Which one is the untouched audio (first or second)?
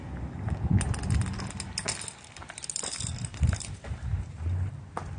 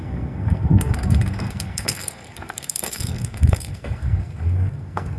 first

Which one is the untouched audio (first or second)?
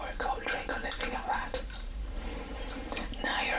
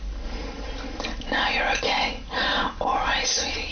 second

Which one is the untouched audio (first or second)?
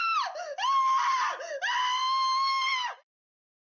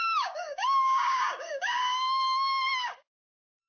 first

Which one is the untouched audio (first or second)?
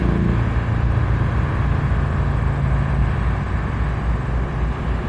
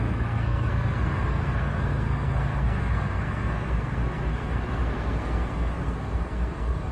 first